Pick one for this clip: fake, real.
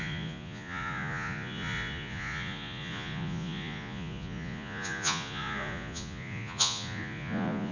fake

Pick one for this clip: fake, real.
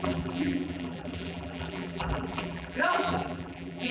fake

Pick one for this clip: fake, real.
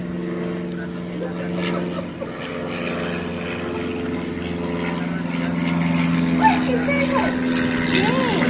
real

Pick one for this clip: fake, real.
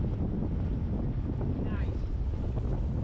real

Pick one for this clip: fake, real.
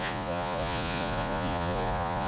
fake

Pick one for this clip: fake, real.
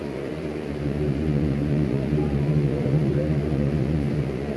fake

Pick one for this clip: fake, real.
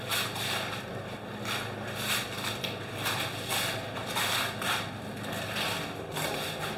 real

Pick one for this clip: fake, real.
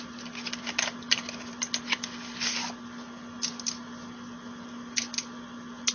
real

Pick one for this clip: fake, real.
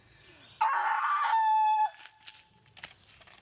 real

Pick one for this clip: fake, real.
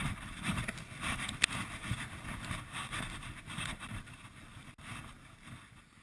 real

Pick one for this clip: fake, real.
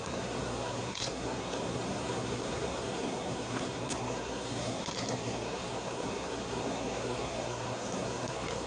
fake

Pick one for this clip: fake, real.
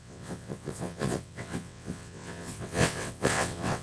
fake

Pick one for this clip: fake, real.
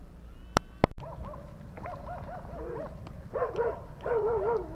real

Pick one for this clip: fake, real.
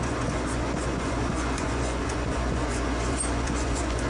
fake